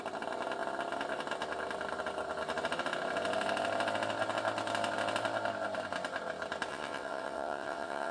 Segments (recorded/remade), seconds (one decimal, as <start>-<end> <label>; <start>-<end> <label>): 0.0-6.7 recorded; 6.7-8.1 remade